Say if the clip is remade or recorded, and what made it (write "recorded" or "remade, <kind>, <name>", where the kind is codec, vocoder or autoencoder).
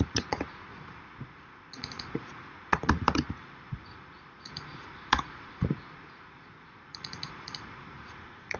remade, vocoder, Vocos